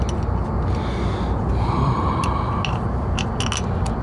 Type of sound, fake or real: real